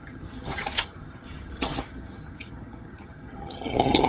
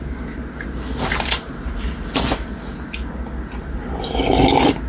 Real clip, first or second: second